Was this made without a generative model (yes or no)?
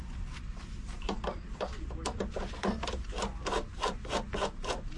no